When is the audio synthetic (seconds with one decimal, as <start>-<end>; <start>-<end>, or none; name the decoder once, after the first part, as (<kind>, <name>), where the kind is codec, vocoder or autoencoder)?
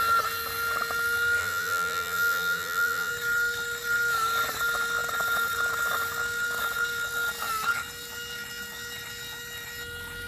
1.4-3.1 (vocoder, BigVGAN v2)